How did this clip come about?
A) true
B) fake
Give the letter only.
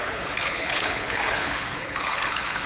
B